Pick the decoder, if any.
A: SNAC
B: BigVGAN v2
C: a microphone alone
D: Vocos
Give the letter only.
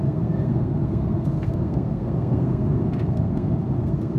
A